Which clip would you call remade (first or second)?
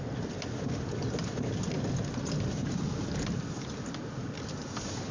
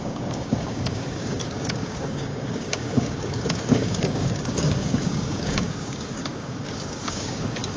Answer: second